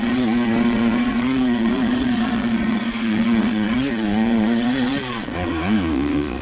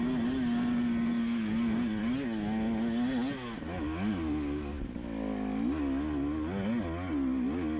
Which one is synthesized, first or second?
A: first